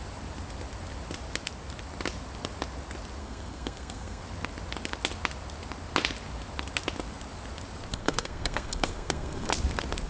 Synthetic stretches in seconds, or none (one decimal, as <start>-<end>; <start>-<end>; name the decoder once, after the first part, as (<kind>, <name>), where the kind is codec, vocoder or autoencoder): 3.2-4.2 (codec, SNAC); 7.9-9.5